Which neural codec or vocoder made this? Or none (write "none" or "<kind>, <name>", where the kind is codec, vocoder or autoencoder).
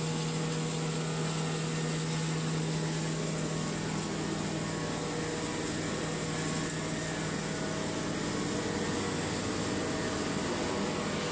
none